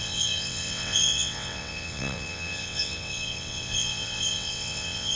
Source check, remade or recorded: remade